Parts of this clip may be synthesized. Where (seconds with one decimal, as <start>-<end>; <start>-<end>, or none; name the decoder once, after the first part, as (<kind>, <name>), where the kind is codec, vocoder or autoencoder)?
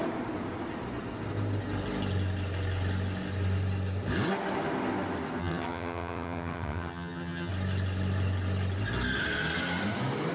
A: 5.4-7.5 (vocoder, HiFi-GAN)